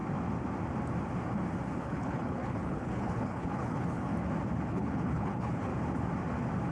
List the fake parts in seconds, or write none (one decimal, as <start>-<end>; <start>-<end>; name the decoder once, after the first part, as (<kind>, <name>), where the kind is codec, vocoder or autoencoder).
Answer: 1.8-4.1 (codec, HILCodec); 4.7-5.7